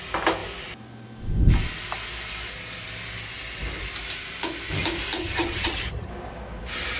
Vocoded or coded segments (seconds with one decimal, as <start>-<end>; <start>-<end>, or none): 5.2-6.1